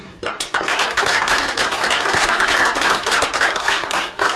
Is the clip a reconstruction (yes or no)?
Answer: yes